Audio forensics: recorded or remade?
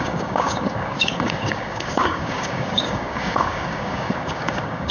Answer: remade